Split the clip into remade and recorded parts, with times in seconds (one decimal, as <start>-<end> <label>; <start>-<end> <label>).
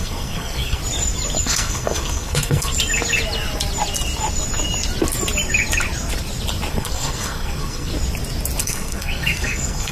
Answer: 0.0-0.8 remade; 0.8-1.4 recorded; 1.4-2.7 remade; 2.7-6.7 recorded; 6.7-7.9 remade; 7.9-8.6 recorded; 8.6-9.9 remade